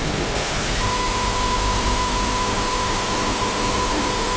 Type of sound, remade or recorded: remade